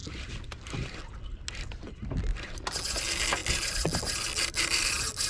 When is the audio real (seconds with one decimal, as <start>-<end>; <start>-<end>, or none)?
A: 0.0-5.3